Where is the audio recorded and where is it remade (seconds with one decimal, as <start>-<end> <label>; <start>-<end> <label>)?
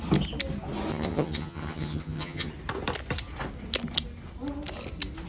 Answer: 0.0-0.9 recorded; 0.9-2.5 remade; 2.5-5.3 recorded